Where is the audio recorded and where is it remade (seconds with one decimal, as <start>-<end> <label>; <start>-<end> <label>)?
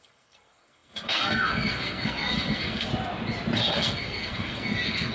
0.0-2.9 remade; 2.9-3.7 recorded; 3.7-5.1 remade